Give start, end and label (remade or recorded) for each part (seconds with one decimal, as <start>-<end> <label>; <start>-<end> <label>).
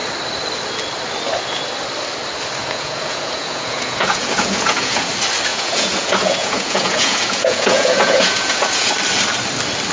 0.0-2.6 recorded; 2.6-5.1 remade; 5.1-5.5 recorded; 5.5-8.9 remade; 8.9-9.9 recorded